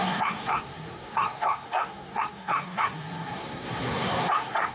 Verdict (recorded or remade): remade